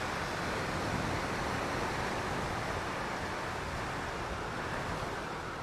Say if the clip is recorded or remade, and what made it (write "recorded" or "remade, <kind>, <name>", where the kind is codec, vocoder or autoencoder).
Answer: recorded